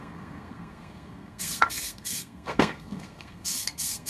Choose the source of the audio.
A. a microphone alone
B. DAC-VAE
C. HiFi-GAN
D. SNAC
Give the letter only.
D